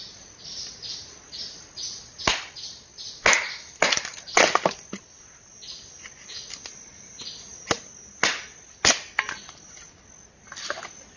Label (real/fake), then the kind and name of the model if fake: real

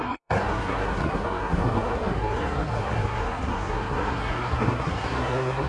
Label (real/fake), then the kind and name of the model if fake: fake, codec, SNAC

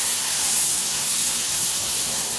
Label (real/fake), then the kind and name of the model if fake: fake, codec, SNAC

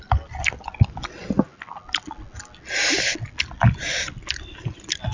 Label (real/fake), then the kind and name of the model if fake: real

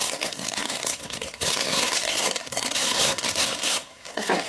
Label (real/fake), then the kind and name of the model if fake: fake, codec, SNAC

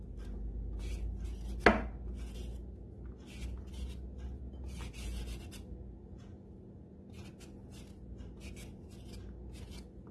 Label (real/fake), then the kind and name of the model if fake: real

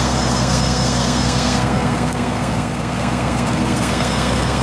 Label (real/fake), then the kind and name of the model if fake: fake, codec, SNAC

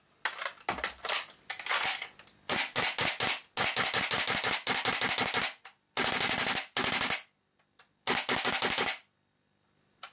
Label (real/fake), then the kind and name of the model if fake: real